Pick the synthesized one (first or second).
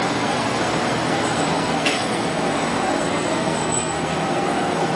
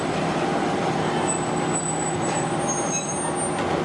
first